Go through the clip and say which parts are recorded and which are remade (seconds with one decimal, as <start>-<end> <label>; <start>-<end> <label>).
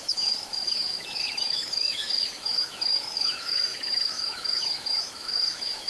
0.0-5.9 remade